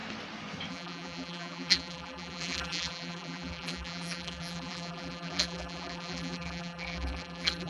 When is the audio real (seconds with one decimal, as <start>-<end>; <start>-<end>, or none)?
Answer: 0.0-0.7